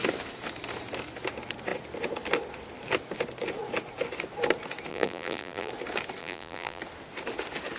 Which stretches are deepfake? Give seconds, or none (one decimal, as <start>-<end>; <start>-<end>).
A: 4.9-5.7; 6.2-6.8

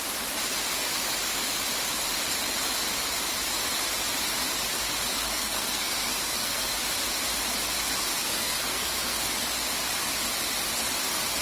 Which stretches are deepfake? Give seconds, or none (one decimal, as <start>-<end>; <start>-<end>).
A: 5.2-6.7; 8.2-9.2